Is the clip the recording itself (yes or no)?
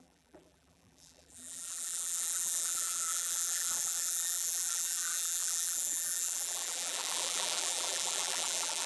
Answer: no